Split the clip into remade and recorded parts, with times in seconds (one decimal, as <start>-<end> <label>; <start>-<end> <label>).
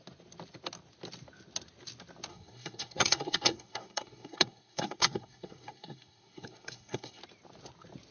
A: 0.0-2.3 recorded; 2.3-7.2 remade; 7.2-8.1 recorded